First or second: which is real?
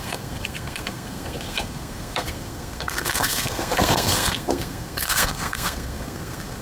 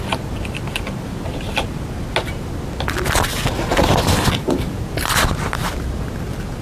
second